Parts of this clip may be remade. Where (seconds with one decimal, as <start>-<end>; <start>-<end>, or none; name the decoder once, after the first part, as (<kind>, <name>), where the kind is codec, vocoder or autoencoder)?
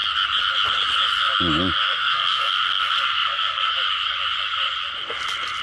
1.8-3.7 (codec, SNAC)